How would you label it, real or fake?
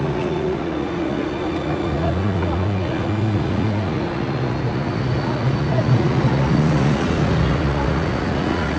fake